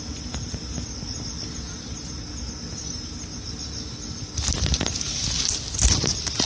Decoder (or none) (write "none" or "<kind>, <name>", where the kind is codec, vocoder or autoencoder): none